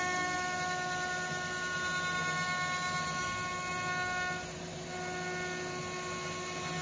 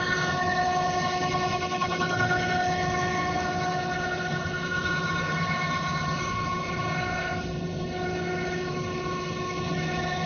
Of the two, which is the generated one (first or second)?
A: second